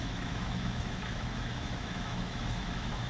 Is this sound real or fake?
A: fake